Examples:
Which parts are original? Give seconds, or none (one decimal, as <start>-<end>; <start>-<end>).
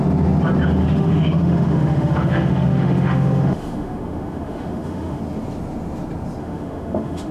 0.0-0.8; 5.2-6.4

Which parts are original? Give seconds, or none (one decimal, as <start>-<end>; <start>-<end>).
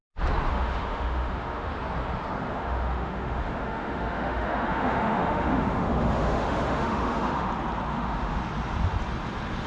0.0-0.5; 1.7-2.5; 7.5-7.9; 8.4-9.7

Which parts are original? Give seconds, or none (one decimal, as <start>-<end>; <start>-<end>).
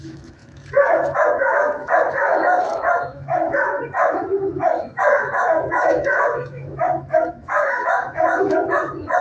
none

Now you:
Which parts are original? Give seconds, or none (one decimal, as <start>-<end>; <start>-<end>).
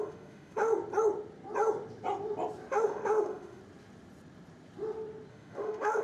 0.7-2.7; 3.6-5.3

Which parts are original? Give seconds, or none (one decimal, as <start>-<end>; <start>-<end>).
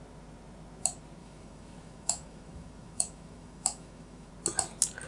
0.0-1.2; 4.3-5.1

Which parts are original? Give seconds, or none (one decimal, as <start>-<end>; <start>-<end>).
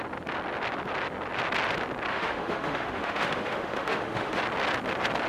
0.0-2.1; 4.4-5.3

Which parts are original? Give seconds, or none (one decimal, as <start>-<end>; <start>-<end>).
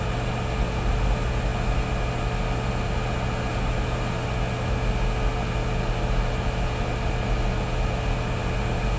0.0-9.0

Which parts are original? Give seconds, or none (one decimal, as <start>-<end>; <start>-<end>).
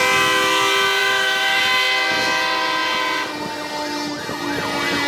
0.0-1.0; 1.6-5.1